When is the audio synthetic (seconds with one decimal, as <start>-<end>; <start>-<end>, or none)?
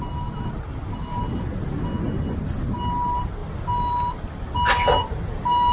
none